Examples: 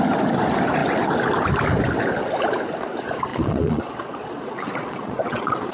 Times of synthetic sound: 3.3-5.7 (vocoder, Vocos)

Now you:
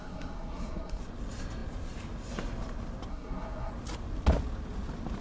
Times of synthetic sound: 0.0-1.0 (codec, SNAC); 3.1-3.7

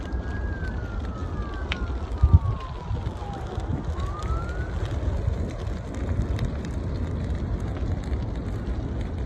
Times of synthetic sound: none

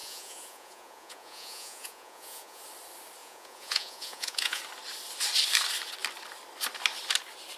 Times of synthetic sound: 0.0-2.6 (vocoder, Vocos); 3.2-4.6

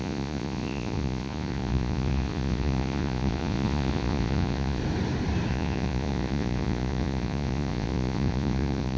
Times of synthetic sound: 0.0-4.8 (vocoder, Vocos); 5.5-9.0

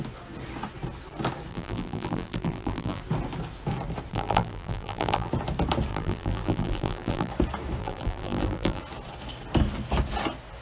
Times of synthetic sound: 1.5-3.0 (vocoder, BigVGAN v2); 4.1-5.3; 5.9-7.3; 7.8-8.8

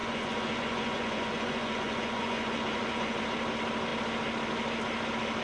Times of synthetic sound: 0.0-3.2 (vocoder, Vocos)

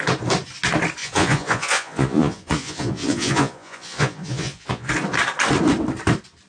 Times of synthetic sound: 1.0-4.9 (vocoder, Vocos)